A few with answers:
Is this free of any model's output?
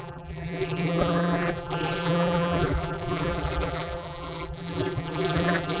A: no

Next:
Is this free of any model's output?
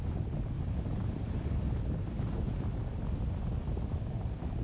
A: yes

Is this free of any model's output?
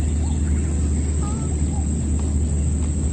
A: yes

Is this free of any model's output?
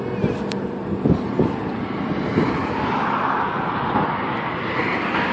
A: yes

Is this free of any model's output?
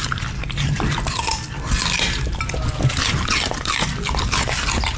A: yes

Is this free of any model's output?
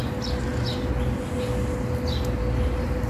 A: yes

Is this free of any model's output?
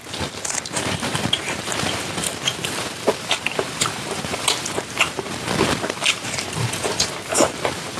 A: no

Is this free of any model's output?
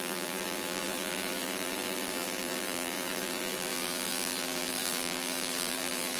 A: no